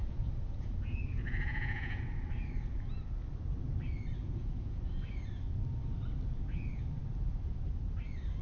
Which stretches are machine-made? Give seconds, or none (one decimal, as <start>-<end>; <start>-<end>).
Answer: 0.0-2.2; 4.2-4.8